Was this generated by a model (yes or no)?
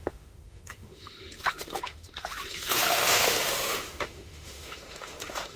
yes